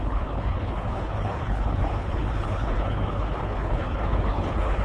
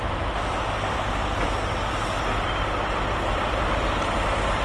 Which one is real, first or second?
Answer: second